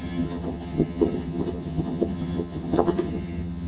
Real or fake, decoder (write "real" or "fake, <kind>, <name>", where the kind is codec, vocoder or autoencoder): fake, vocoder, HiFi-GAN